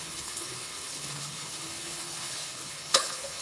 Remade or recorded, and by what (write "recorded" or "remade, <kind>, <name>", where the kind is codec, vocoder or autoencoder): remade, codec, HILCodec